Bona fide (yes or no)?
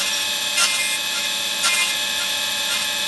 yes